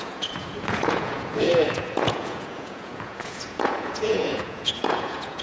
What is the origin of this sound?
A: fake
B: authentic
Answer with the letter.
A